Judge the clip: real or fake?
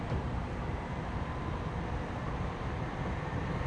fake